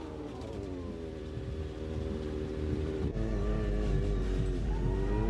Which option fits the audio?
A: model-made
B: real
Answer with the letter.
B